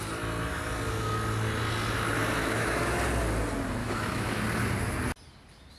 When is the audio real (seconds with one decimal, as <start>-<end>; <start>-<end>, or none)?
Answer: 0.0-2.4; 3.0-3.8; 4.4-5.8